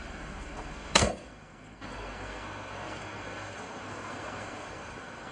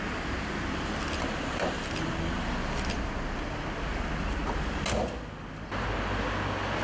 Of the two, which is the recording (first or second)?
second